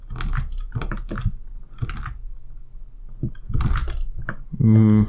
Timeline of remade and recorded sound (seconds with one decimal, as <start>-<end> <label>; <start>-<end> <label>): 0.0-5.1 recorded